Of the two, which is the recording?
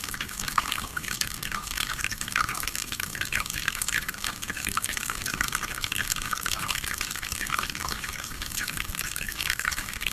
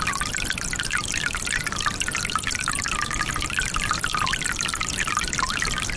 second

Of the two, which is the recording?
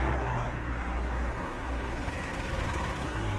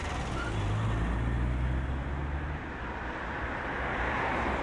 second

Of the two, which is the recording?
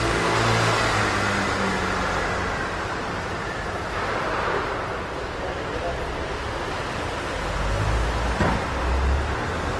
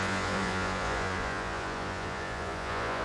first